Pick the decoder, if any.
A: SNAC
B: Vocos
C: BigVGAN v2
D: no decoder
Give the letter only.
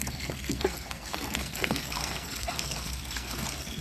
A